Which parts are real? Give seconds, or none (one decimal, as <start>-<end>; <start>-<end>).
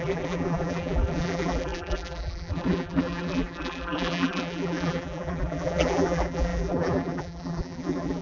none